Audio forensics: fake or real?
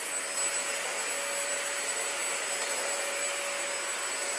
real